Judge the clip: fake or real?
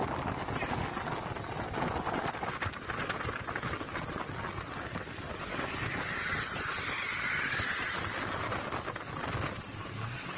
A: real